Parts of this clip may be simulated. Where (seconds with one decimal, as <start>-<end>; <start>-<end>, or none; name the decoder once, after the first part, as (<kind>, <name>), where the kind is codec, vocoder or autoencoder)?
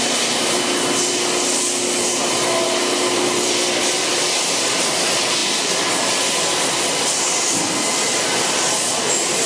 none